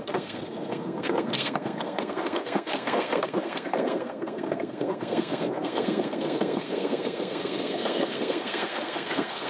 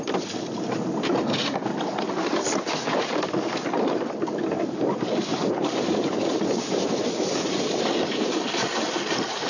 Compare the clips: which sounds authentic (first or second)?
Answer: second